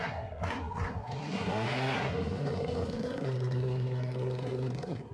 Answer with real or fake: fake